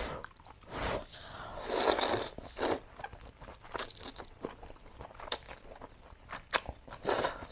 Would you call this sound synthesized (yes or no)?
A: no